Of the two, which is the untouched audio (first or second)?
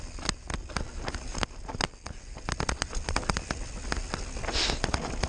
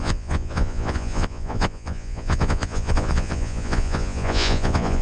first